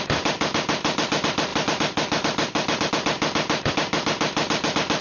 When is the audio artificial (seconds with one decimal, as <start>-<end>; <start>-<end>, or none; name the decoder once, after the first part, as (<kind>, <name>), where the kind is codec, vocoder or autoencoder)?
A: none